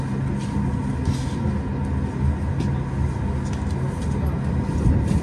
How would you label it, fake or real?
real